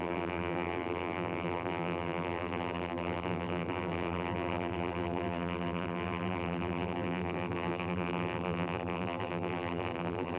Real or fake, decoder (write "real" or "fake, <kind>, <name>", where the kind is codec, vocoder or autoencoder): fake, vocoder, BigVGAN v2